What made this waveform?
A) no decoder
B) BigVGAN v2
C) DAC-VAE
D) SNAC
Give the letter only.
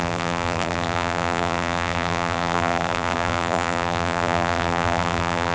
B